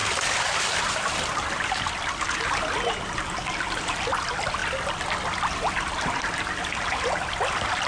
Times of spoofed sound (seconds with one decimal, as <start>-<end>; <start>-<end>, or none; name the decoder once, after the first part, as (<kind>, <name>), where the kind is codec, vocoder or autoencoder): none